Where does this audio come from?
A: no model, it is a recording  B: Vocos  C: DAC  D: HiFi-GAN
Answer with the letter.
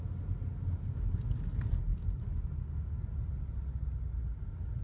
A